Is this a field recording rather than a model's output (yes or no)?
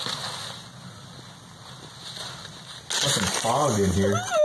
yes